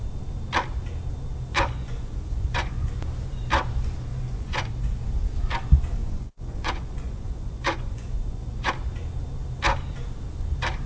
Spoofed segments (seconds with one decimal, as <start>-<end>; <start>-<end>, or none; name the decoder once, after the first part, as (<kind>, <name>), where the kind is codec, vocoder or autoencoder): 1.5-2.9 (vocoder, Vocos); 4.1-4.7; 6.0-8.7